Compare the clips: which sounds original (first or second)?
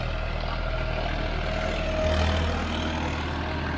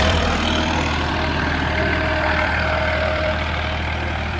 first